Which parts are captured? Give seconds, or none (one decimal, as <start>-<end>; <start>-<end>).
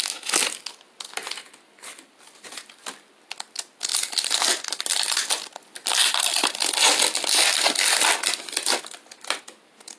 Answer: 0.0-10.0